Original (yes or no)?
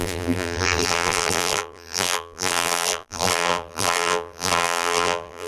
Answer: no